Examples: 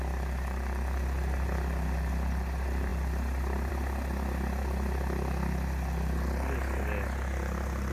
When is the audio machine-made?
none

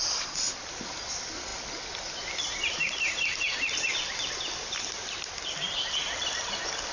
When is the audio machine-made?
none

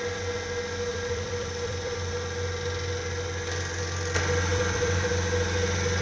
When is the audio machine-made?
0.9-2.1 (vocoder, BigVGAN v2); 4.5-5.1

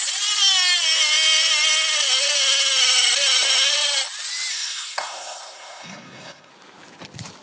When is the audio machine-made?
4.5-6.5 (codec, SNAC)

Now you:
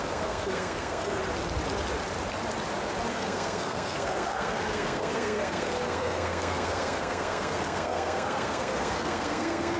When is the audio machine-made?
0.0-1.2 (codec, SNAC); 3.1-9.8

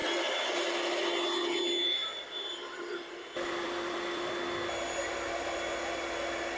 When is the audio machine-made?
0.0-0.6 (vocoder, BigVGAN v2); 2.0-4.3